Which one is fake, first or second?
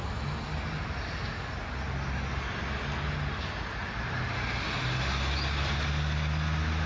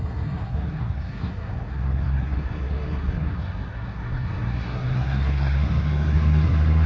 second